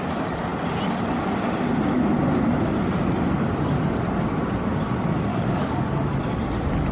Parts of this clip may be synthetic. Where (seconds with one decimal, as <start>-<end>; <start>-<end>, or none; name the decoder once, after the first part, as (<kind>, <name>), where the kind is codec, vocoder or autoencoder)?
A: 5.3-5.8 (codec, DAC)